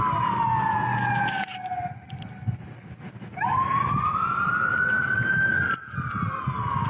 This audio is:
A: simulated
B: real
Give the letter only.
B